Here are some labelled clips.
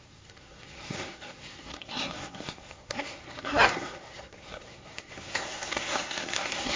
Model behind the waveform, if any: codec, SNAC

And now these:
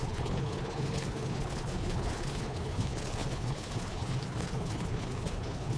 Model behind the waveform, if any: codec, HILCodec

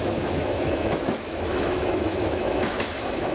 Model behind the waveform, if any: autoencoder, DAC-VAE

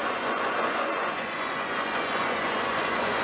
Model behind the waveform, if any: vocoder, Vocos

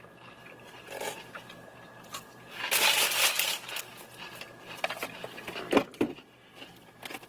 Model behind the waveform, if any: none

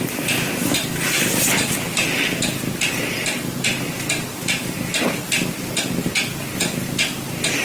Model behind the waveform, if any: none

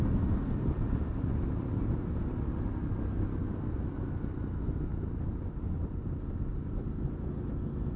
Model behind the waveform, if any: none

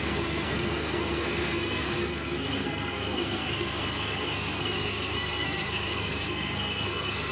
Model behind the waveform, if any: codec, SNAC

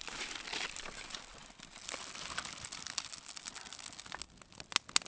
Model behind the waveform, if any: none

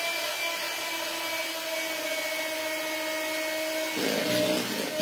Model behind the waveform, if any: none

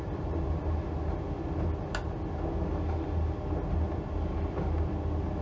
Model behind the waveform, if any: none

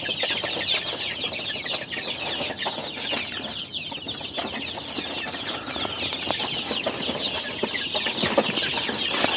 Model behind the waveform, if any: none